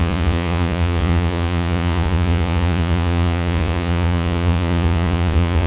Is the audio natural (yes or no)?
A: no